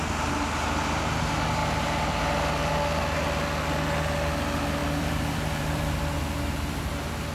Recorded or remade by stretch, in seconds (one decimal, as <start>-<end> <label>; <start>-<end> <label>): 0.0-4.8 recorded; 4.8-5.9 remade; 5.9-7.3 recorded